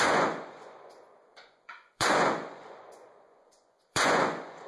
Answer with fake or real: fake